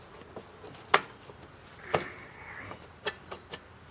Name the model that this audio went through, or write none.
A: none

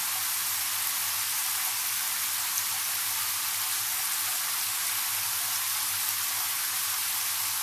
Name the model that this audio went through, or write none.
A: none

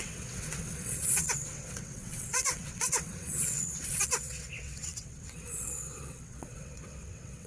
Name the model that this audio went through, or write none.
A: vocoder, WaveNeXt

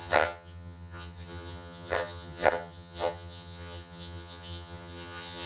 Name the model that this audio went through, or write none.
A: vocoder, HiFi-GAN